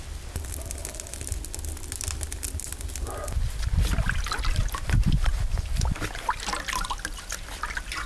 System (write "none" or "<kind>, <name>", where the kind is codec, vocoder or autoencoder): none